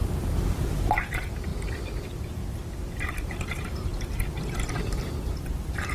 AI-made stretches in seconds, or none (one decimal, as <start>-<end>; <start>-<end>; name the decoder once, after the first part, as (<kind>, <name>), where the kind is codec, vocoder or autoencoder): 0.0-1.5 (vocoder, BigVGAN v2); 2.0-2.4; 2.9-3.9; 5.0-5.9

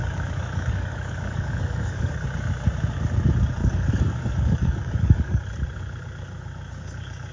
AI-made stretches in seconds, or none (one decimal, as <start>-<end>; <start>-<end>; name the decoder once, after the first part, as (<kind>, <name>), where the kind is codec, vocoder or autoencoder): 0.0-2.1 (codec, DAC); 3.6-5.4

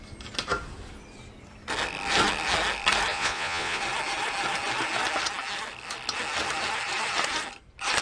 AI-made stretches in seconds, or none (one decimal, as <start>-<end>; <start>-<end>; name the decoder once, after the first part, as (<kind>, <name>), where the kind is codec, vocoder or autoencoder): 3.1-3.8 (vocoder, Vocos)

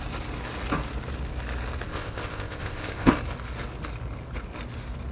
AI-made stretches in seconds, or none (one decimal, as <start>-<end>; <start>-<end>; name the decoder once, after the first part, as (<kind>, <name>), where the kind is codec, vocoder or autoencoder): 1.9-3.1 (codec, ZipCodec)

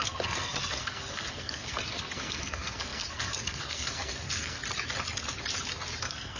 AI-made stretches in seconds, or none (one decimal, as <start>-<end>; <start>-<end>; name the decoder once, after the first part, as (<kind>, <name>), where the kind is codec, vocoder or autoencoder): 0.0-4.6 (codec, SNAC); 6.0-6.4

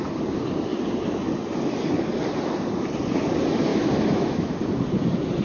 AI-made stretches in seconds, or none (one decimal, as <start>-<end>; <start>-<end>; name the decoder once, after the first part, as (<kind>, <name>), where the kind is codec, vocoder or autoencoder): 3.7-4.5 (autoencoder, DAC-VAE)